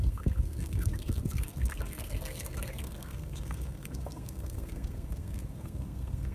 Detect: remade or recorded remade